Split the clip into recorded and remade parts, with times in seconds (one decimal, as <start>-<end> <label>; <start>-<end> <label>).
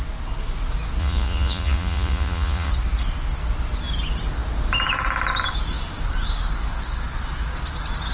0.0-1.0 recorded; 1.0-2.7 remade; 2.7-8.1 recorded